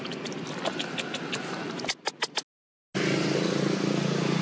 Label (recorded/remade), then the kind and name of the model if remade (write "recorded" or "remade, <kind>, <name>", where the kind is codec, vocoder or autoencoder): recorded